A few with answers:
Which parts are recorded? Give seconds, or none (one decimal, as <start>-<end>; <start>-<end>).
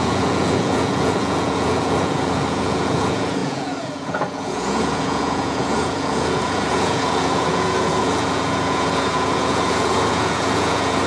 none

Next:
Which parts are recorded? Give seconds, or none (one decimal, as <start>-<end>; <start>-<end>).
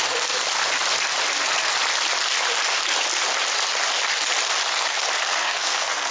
0.0-5.4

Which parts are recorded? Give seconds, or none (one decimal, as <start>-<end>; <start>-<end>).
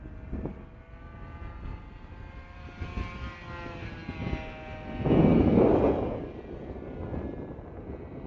0.0-8.3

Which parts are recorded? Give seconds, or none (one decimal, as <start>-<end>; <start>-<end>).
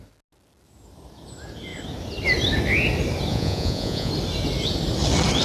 0.0-3.3; 4.1-5.4